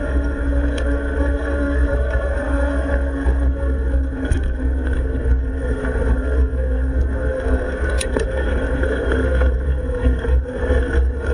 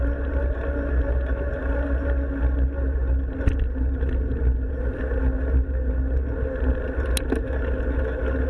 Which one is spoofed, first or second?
first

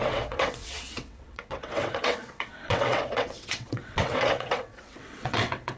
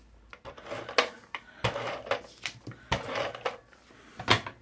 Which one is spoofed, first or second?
first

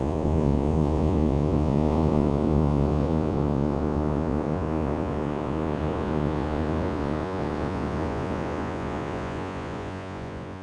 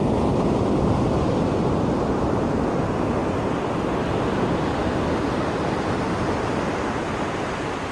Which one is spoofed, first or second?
first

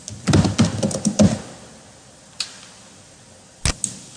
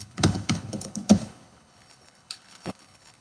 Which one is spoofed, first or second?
second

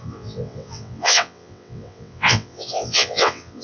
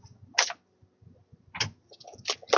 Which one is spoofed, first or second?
first